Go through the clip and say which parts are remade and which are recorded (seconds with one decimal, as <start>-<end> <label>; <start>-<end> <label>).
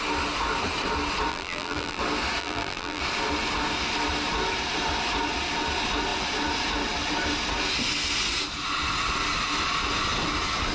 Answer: 0.0-1.3 recorded; 1.3-2.0 remade; 2.0-2.4 recorded; 2.4-3.0 remade; 3.0-10.7 recorded